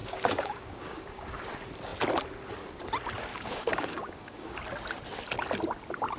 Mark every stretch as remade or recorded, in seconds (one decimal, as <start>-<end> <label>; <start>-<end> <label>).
0.0-1.4 remade; 1.4-3.3 recorded; 3.3-4.6 remade; 4.6-6.2 recorded